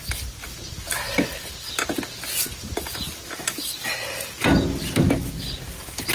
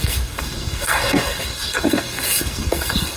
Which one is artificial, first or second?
second